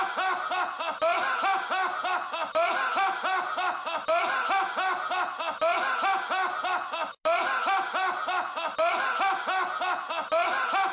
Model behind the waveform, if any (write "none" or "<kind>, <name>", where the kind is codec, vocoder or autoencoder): none